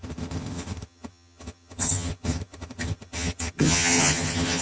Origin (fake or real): fake